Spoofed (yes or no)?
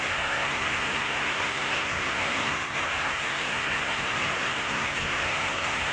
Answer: yes